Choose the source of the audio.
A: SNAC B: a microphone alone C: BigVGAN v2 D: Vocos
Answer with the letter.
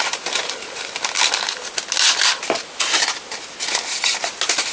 B